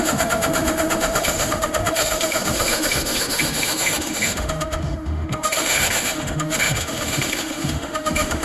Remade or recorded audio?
remade